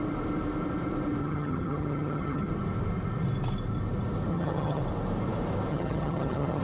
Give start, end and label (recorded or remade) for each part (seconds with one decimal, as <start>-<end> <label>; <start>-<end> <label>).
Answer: 0.0-1.2 recorded; 1.2-2.5 remade; 2.5-4.3 recorded; 4.3-4.8 remade; 4.8-5.7 recorded; 5.7-6.6 remade